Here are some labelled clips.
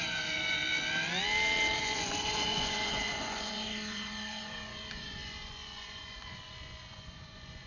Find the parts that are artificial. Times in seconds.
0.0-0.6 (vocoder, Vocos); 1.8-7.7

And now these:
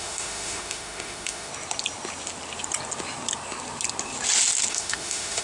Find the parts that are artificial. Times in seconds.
0.0-1.5 (autoencoder, DAC-VAE); 4.7-5.4

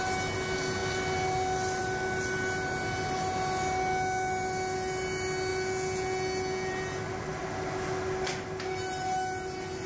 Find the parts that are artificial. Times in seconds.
5.5-6.7 (vocoder, Vocos)